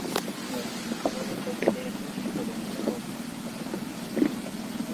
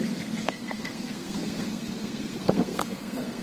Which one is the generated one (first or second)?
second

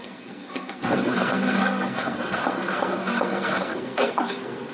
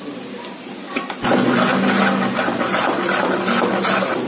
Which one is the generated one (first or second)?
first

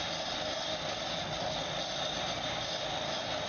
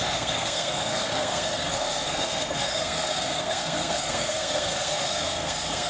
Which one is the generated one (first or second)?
second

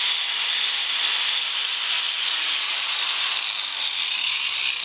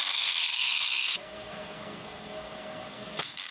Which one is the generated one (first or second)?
second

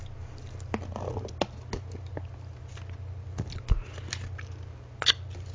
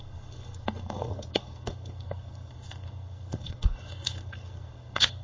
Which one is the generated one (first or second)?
second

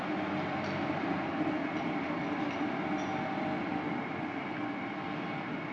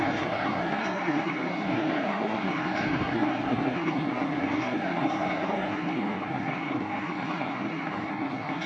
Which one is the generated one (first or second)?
second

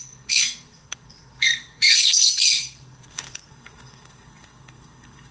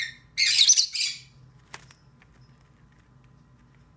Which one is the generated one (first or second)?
first